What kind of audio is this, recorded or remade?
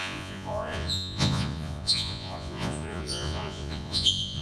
remade